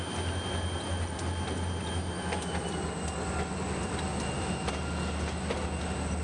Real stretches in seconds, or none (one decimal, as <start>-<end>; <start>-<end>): 0.0-4.1; 4.7-6.2